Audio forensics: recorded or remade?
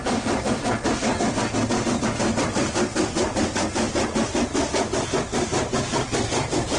recorded